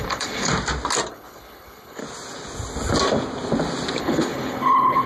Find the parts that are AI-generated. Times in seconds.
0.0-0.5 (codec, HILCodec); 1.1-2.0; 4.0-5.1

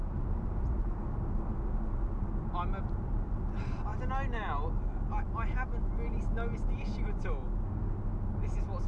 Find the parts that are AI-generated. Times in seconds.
none

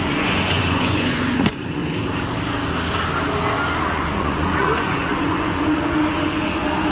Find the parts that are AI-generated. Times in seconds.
0.0-1.8 (vocoder, Vocos); 3.8-6.9

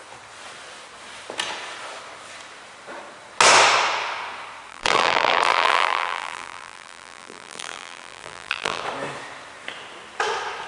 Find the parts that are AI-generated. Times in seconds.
4.7-8.8 (vocoder, BigVGAN v2)

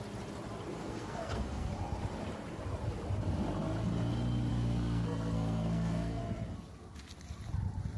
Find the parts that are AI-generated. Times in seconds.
0.8-1.7 (codec, SNAC); 4.5-6.2